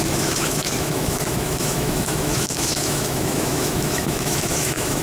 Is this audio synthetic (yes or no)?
yes